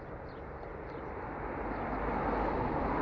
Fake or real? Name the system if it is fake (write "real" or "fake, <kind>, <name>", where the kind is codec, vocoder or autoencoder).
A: real